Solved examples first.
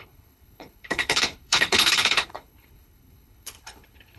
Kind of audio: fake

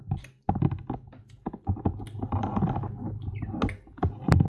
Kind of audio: real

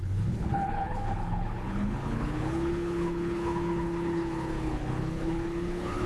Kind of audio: fake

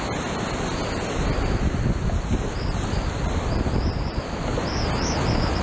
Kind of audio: real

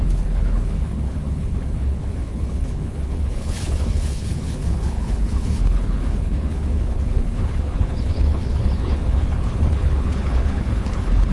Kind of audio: fake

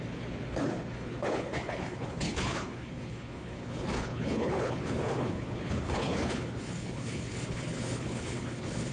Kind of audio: fake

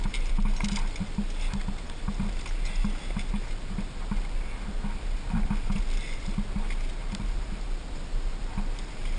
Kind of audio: real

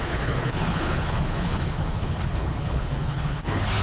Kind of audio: fake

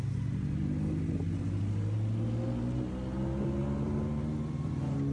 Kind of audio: real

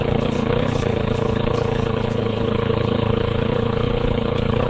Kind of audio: fake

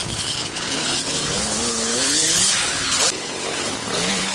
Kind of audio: fake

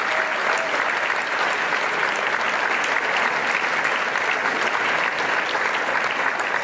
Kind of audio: real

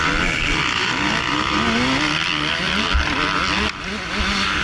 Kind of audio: real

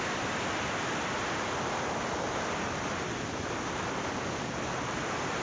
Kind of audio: real